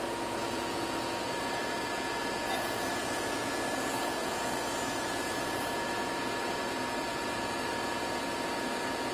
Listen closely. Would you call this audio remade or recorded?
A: remade